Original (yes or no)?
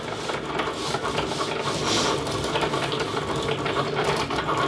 yes